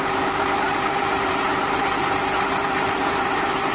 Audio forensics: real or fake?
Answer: fake